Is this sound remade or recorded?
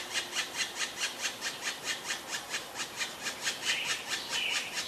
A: recorded